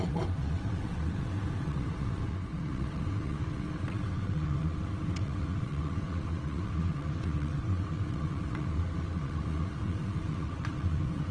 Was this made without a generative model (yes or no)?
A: no